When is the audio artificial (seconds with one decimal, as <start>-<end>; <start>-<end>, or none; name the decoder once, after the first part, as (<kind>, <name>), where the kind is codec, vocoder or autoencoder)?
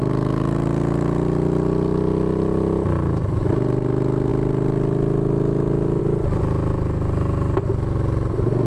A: none